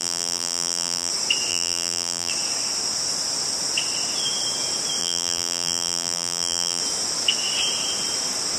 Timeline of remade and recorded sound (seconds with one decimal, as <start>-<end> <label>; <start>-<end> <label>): 0.0-1.1 remade; 1.1-1.5 recorded; 1.5-2.3 remade; 2.3-5.0 recorded; 5.0-6.8 remade; 6.8-8.6 recorded